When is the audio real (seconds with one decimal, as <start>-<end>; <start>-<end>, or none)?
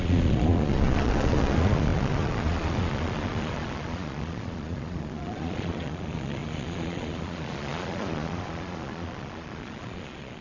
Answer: none